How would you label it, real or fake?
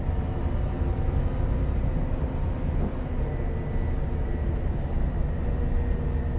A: real